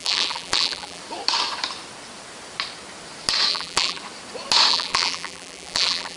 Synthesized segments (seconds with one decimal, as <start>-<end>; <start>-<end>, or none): 0.0-1.0; 3.5-4.0; 4.7-6.2